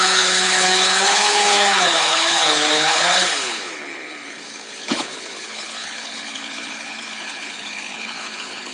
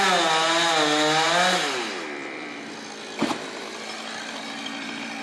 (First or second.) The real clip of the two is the second